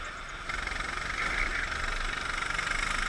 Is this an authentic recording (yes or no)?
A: yes